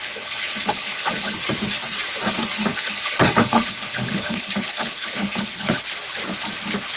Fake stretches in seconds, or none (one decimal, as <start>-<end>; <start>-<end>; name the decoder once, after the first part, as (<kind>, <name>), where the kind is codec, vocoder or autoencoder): 0.0-1.3 (codec, HILCodec); 2.7-5.8